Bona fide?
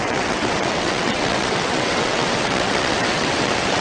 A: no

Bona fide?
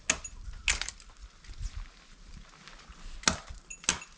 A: yes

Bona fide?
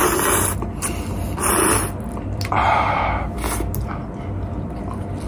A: yes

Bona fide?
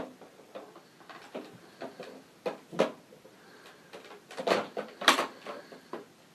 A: yes